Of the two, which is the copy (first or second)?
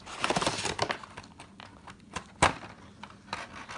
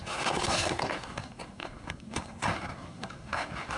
second